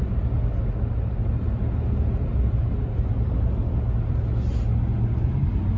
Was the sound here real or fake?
real